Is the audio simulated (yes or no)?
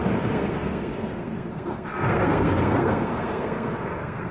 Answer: yes